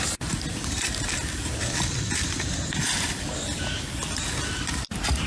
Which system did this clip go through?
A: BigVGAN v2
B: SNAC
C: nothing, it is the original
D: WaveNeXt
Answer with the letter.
C